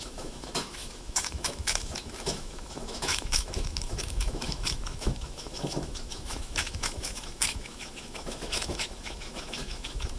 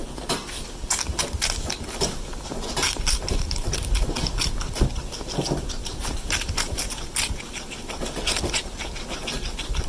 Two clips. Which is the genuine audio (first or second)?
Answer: second